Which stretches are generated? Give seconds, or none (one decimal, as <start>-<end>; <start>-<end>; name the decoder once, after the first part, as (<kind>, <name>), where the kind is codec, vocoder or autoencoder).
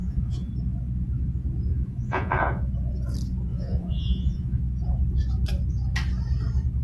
0.0-0.5 (vocoder, Vocos); 1.7-2.7; 3.5-4.6